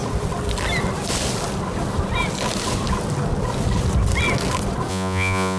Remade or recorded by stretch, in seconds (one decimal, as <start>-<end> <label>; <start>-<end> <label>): 0.0-4.9 recorded; 4.9-5.6 remade